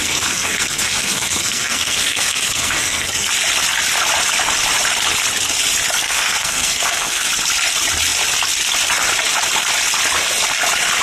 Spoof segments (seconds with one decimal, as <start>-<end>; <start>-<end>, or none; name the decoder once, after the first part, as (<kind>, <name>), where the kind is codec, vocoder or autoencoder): 0.0-3.3 (codec, SNAC); 6.0-7.3